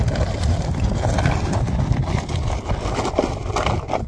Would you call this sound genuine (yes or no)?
yes